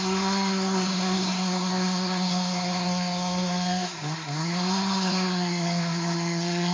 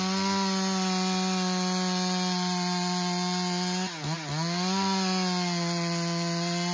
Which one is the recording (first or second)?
second